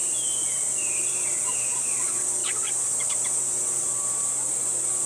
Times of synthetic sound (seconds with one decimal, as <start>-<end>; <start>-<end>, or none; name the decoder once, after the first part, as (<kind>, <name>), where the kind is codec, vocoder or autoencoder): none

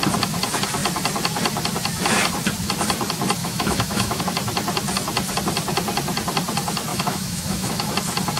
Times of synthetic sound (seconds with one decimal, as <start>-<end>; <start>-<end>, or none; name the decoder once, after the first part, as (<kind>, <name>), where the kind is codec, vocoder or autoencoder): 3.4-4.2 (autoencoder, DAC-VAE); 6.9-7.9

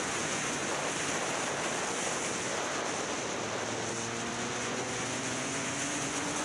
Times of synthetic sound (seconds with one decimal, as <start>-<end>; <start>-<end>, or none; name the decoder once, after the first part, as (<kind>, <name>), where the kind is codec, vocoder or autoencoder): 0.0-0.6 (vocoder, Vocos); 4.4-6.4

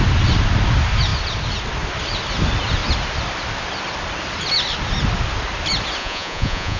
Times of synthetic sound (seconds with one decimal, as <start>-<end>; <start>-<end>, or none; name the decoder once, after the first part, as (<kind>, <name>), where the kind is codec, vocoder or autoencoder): 6.0-6.8 (vocoder, Vocos)

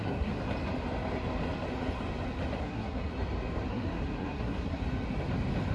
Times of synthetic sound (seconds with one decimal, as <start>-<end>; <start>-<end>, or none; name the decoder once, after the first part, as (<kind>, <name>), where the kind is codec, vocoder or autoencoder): 0.0-0.4 (codec, SNAC); 2.6-3.1; 3.7-4.8